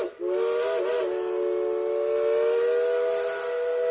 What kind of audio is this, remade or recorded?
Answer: recorded